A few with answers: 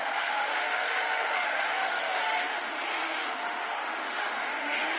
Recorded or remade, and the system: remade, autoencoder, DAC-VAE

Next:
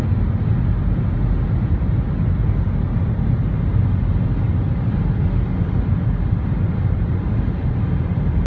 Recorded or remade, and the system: recorded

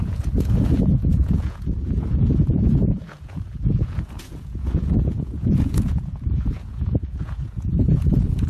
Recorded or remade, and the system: remade, vocoder, Vocos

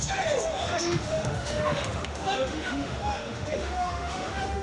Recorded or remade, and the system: remade, autoencoder, DAC-VAE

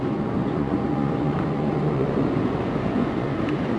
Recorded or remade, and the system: remade, vocoder, Vocos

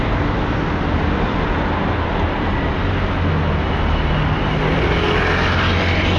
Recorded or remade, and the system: recorded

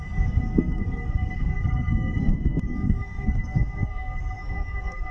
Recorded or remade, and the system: remade, codec, SNAC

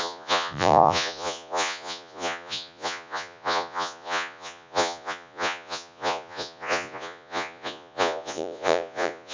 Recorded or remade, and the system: remade, vocoder, Vocos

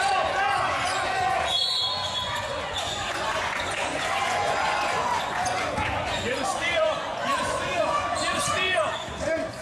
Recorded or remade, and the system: remade, vocoder, Vocos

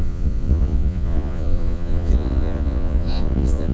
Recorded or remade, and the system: remade, vocoder, Vocos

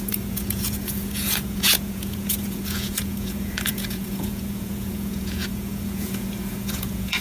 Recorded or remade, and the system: remade, vocoder, Vocos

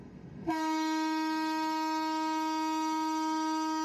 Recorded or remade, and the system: remade, autoencoder, DAC-VAE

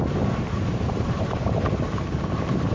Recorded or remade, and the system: remade, vocoder, BigVGAN v2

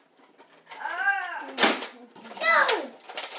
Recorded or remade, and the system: recorded